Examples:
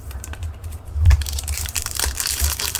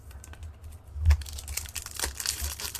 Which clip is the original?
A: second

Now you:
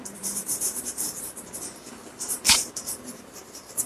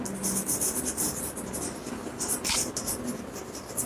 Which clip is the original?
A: second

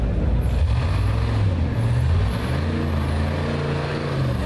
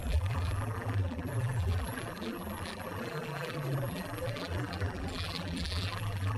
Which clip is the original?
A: first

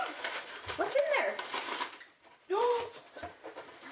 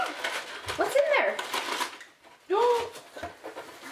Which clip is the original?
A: second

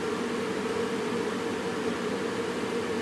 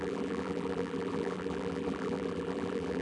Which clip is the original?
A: first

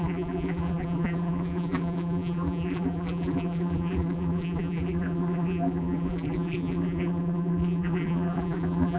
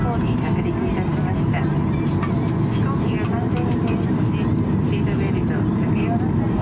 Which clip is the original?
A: second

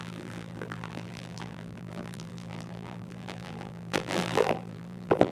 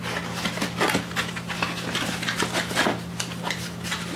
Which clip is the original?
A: second